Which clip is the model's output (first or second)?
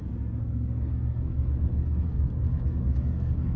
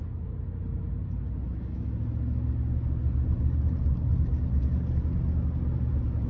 first